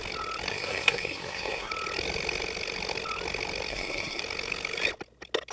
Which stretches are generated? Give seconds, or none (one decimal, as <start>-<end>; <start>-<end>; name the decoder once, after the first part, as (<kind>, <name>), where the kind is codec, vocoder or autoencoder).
0.5-1.7 (codec, SNAC); 3.7-4.2